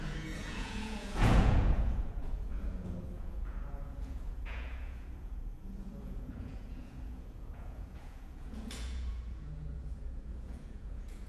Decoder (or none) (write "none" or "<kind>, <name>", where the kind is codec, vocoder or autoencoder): vocoder, Vocos